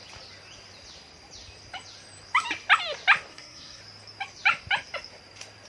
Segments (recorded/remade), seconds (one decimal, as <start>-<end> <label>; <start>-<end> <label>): 0.0-3.3 recorded; 3.3-3.8 remade; 3.8-5.7 recorded

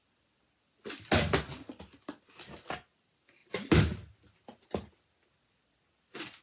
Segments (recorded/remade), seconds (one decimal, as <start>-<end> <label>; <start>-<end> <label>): 0.0-6.4 recorded